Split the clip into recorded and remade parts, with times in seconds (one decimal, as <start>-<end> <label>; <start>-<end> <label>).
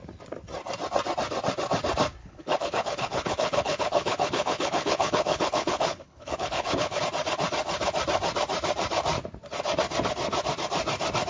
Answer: 0.0-2.2 recorded; 2.2-7.0 remade; 7.0-11.3 recorded